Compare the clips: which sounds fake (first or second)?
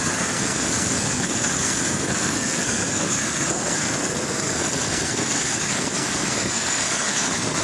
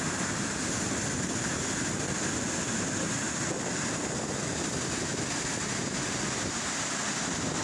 first